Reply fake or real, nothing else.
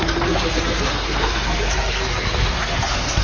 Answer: fake